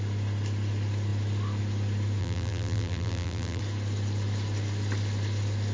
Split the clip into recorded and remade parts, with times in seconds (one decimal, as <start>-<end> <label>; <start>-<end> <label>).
0.0-2.2 recorded; 2.2-3.6 remade; 3.6-5.7 recorded